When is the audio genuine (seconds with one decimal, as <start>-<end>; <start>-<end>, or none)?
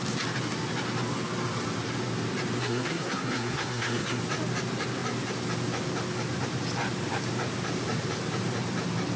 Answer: 0.0-2.6; 4.2-9.2